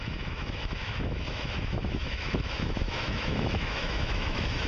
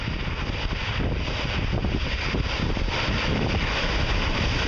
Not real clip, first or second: first